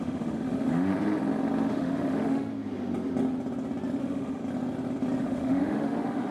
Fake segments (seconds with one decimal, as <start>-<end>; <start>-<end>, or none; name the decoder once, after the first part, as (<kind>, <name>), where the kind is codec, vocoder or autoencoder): 0.0-0.9 (autoencoder, DAC-VAE); 1.7-2.5; 4.0-4.4; 5.2-6.3